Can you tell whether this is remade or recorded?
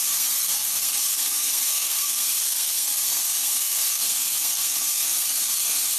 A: remade